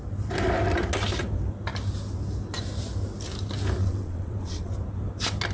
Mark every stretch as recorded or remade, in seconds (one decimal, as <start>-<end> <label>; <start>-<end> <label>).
0.0-3.8 recorded; 3.8-4.7 remade; 4.7-5.5 recorded